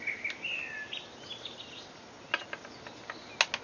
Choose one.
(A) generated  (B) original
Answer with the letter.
B